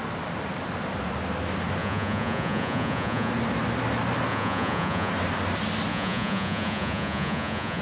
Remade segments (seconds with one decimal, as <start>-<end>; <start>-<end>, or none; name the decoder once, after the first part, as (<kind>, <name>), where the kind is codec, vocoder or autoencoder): 1.8-3.3 (vocoder, Vocos); 4.3-5.1; 5.9-7.8